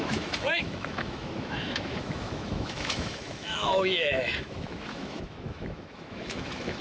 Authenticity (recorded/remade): remade